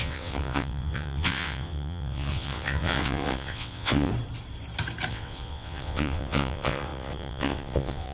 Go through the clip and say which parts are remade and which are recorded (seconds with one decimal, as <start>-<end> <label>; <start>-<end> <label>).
0.0-4.1 remade; 4.1-5.1 recorded; 5.1-8.1 remade